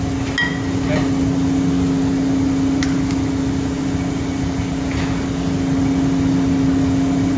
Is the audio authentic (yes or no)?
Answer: yes